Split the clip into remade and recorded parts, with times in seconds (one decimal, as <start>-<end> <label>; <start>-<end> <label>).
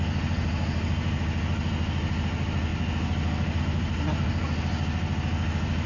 0.0-5.9 recorded